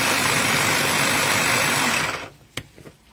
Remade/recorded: recorded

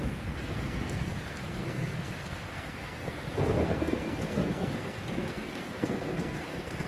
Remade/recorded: remade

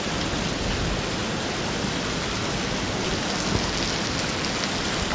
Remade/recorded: recorded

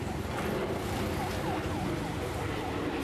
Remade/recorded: recorded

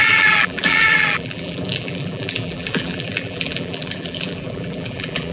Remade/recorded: remade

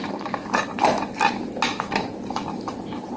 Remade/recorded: recorded